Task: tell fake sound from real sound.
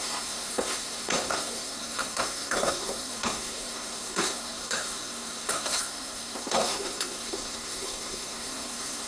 fake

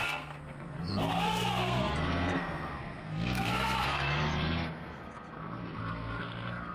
fake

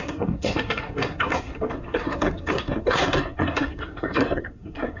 fake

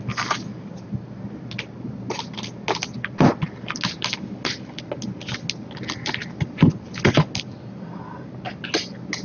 real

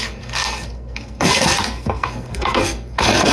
fake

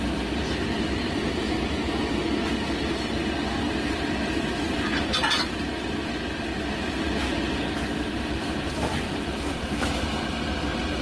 real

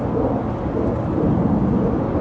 real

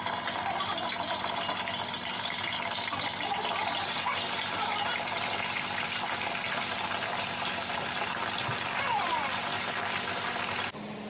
real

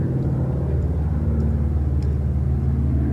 real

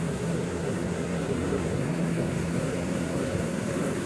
fake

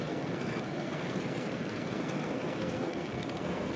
fake